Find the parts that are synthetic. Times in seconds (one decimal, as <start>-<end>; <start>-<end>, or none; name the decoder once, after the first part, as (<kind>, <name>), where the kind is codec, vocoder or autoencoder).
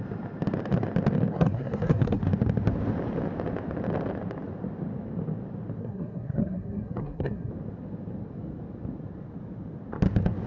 1.3-2.2 (codec, SNAC); 5.8-7.5